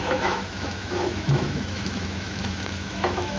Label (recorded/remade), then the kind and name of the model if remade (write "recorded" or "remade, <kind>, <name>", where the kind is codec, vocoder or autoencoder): remade, autoencoder, DAC-VAE